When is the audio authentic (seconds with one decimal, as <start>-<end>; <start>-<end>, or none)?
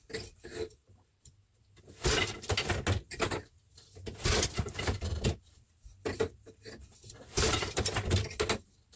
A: 0.0-9.0